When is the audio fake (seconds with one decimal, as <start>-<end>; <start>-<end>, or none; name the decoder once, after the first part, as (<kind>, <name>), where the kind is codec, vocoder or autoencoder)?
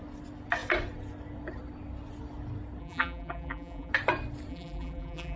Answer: 2.8-3.9 (vocoder, BigVGAN v2); 4.5-5.4